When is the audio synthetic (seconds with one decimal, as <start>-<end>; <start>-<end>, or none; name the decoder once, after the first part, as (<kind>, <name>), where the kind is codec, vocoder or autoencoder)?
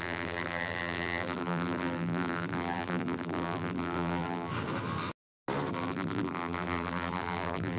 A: 0.0-4.5 (vocoder, BigVGAN v2); 5.7-7.8